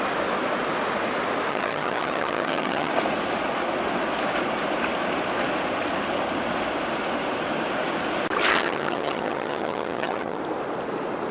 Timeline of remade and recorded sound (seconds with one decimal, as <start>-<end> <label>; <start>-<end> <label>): 0.0-1.5 recorded; 1.5-2.9 remade; 2.9-8.5 recorded; 8.5-10.4 remade; 10.4-11.3 recorded